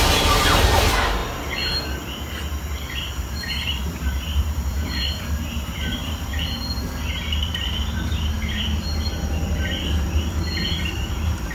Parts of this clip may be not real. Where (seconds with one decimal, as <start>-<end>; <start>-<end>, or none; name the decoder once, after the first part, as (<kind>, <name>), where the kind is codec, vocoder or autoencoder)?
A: 0.0-1.2 (vocoder, BigVGAN v2); 3.2-6.3; 7.4-11.5